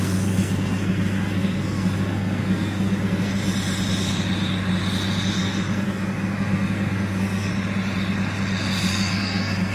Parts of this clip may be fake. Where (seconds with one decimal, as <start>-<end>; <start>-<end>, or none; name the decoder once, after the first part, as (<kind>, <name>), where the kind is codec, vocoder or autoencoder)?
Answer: 0.0-3.3 (codec, SNAC); 5.4-7.5; 8.9-9.7